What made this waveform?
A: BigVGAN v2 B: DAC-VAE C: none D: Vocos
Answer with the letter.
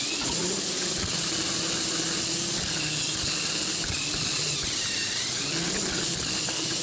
C